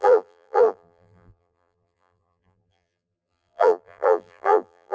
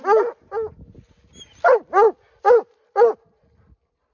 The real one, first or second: second